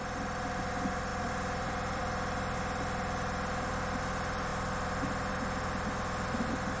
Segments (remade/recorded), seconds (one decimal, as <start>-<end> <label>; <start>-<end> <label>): 0.0-1.1 recorded; 1.1-2.0 remade; 2.0-6.8 recorded